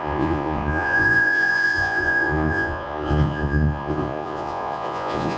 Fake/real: fake